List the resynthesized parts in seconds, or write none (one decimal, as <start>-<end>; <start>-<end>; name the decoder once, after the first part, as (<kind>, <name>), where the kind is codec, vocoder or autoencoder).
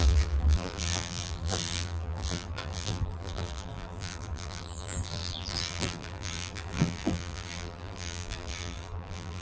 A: 0.0-9.4 (vocoder, BigVGAN v2)